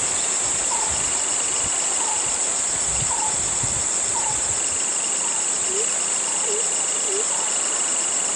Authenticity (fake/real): real